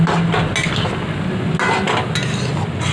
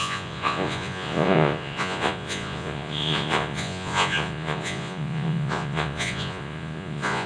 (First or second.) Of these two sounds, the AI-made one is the second